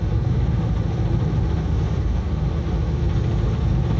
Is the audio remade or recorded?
recorded